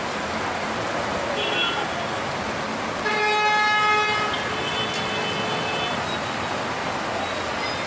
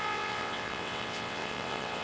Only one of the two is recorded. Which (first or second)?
first